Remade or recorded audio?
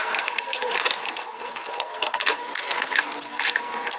remade